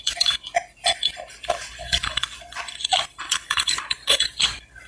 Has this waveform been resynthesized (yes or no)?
yes